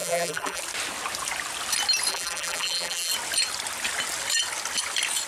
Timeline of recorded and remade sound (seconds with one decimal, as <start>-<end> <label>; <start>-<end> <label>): 0.0-0.6 remade; 0.6-2.1 recorded; 2.1-3.1 remade; 3.1-5.3 recorded